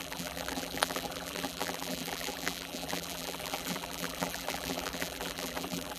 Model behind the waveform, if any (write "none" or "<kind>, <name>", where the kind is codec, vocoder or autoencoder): vocoder, BigVGAN v2